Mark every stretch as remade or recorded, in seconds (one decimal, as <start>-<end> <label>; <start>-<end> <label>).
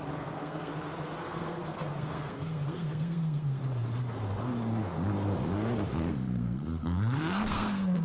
0.0-0.7 remade; 0.7-1.2 recorded; 1.2-3.6 remade; 3.6-6.1 recorded; 6.1-8.0 remade